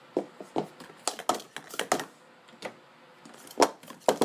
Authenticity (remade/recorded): recorded